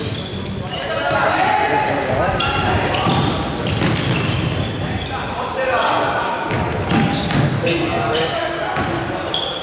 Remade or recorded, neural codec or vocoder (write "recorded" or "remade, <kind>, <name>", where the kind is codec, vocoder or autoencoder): recorded